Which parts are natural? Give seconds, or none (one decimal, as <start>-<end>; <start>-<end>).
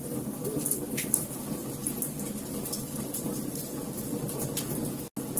0.0-5.4